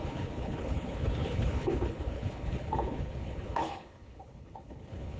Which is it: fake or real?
fake